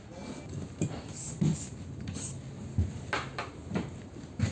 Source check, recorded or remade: recorded